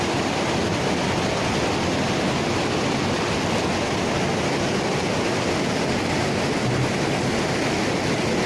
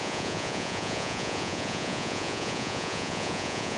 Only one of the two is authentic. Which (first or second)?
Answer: first